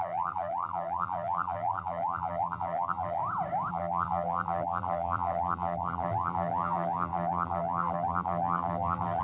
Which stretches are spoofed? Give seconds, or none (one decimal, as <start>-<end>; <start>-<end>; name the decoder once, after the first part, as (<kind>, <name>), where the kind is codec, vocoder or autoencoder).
0.0-3.2 (vocoder, BigVGAN v2); 3.7-9.2